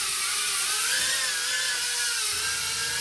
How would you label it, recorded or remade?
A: recorded